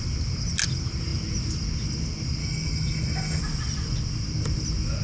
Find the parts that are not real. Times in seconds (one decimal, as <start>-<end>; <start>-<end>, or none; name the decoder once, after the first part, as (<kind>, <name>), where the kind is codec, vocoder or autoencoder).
2.4-3.4 (autoencoder, DAC-VAE)